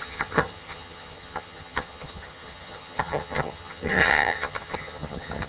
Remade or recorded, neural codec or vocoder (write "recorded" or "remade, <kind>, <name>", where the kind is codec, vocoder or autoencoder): remade, vocoder, HiFi-GAN